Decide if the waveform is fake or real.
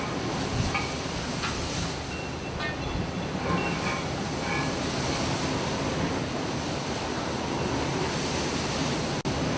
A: real